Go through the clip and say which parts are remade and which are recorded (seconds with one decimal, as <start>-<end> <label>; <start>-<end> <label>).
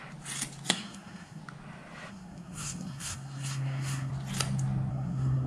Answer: 0.0-0.7 recorded; 0.7-1.4 remade; 1.4-2.1 recorded; 2.1-4.1 remade; 4.1-4.9 recorded; 4.9-5.5 remade